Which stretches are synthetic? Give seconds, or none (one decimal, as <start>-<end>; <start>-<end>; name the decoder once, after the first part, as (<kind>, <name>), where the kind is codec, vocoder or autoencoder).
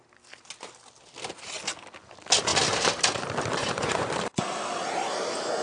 3.6-4.1 (vocoder, Vocos)